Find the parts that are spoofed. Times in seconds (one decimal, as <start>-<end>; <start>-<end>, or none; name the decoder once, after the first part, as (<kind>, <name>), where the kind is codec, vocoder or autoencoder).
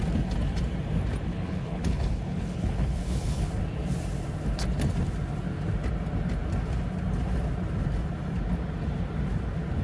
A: 1.3-3.6 (codec, HILCodec)